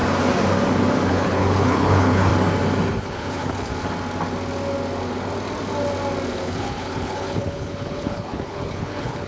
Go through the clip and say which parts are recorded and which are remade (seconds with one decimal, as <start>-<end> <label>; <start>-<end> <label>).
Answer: 0.0-1.1 recorded; 1.1-2.3 remade; 2.3-3.0 recorded; 3.0-3.7 remade; 3.7-6.3 recorded; 6.3-9.3 remade